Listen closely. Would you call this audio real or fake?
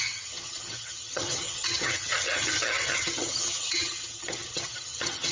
fake